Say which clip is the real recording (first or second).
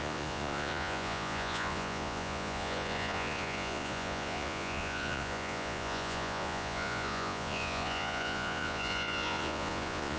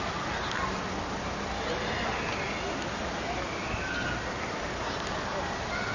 second